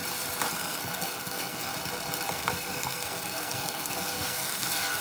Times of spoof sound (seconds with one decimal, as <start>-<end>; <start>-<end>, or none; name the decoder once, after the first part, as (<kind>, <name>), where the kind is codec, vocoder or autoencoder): 0.5-1.7 (codec, SNAC); 2.3-5.0